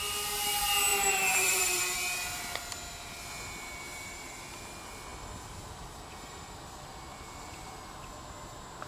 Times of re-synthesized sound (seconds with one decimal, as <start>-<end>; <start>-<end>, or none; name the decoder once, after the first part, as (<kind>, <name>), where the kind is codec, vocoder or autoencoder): 0.9-1.8 (vocoder, BigVGAN v2); 3.9-4.5; 7.1-7.7